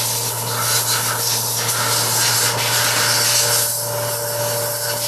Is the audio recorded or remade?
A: recorded